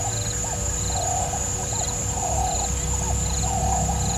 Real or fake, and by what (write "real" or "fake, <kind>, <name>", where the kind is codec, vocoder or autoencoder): real